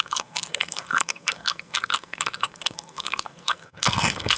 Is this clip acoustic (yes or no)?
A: no